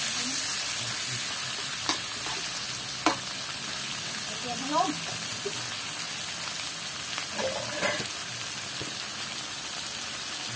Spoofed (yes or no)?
no